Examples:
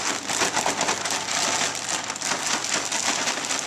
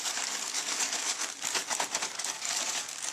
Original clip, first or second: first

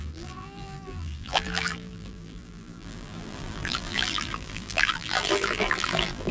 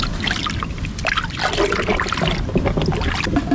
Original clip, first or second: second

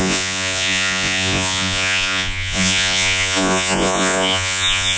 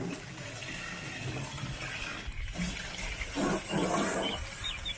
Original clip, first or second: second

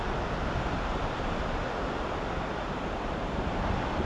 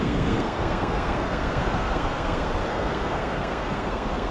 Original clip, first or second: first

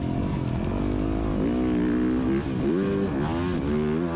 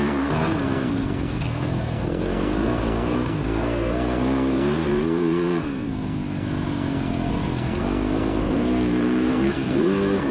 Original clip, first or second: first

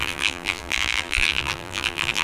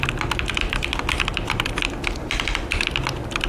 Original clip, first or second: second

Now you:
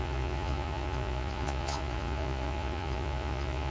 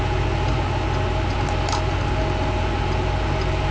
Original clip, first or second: second